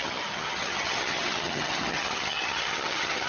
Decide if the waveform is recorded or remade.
remade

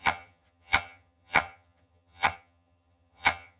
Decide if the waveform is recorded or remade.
remade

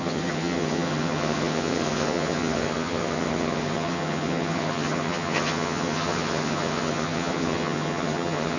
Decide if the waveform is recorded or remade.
remade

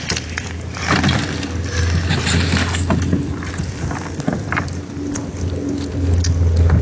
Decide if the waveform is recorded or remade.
recorded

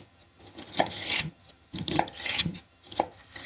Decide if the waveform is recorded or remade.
remade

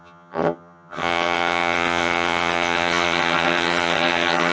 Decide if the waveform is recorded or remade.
remade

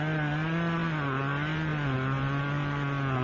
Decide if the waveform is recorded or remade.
recorded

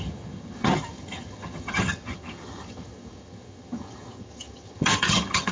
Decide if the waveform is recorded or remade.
remade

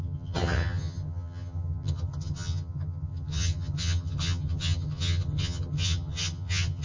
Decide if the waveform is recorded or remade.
remade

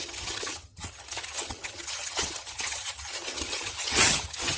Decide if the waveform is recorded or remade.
remade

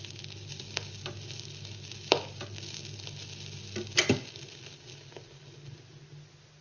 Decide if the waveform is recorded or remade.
recorded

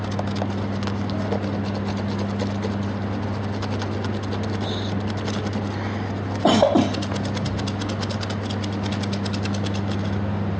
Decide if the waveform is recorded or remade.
recorded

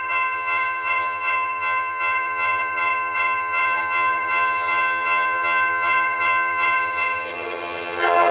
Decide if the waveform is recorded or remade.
remade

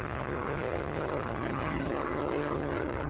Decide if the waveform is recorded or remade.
remade